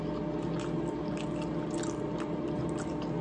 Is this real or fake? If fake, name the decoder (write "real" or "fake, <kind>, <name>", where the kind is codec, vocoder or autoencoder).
real